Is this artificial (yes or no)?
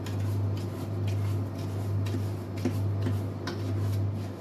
no